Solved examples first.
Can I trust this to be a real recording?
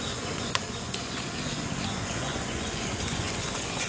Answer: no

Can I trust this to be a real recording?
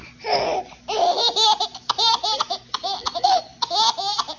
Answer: yes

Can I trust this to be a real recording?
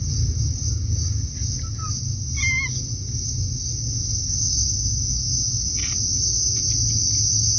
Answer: yes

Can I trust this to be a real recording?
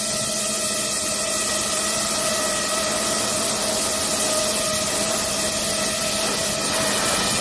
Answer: yes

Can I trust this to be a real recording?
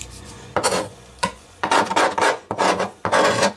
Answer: no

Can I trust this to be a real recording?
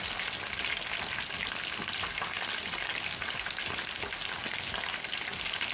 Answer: yes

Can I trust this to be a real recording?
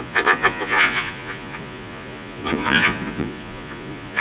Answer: no